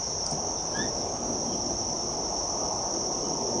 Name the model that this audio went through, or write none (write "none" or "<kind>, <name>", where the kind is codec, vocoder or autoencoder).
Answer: none